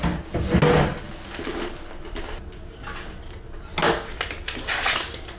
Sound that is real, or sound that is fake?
real